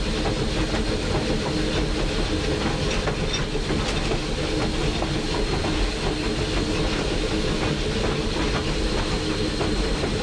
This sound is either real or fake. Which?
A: real